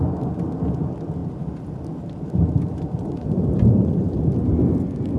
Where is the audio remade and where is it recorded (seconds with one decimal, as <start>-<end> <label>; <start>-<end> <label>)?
0.0-1.2 recorded; 1.2-4.3 remade; 4.3-5.2 recorded